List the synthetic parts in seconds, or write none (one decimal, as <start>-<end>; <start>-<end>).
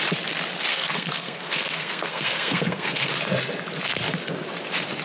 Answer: 0.7-3.1